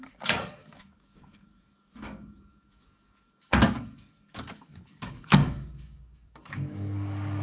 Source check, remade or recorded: remade